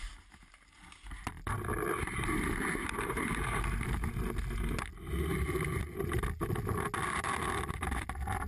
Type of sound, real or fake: real